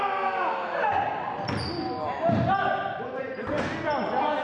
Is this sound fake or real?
real